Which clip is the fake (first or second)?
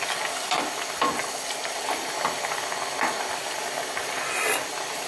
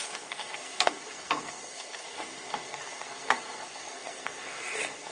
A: second